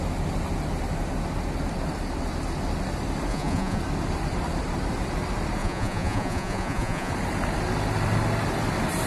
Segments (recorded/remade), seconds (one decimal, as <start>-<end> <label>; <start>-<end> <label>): 0.0-3.3 recorded; 3.3-3.8 remade; 3.8-5.6 recorded; 5.6-7.1 remade; 7.1-9.1 recorded